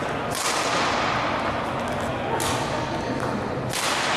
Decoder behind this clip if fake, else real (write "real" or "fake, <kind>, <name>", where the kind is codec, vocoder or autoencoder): real